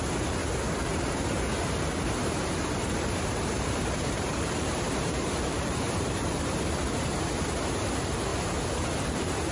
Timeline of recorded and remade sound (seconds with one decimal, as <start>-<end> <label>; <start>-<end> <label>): 0.0-0.4 remade; 0.4-2.2 recorded; 2.2-8.3 remade; 8.3-9.0 recorded; 9.0-9.5 remade